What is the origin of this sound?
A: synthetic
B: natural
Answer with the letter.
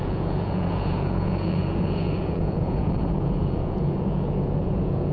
A